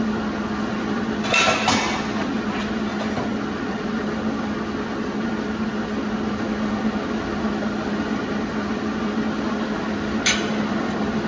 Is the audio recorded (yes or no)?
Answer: yes